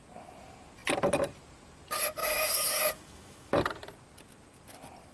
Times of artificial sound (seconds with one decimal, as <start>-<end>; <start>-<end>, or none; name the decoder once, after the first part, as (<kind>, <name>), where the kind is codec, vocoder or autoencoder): 2.2-3.5 (autoencoder, DAC-VAE)